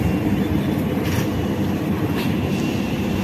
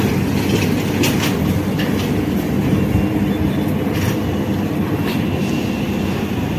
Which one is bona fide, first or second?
second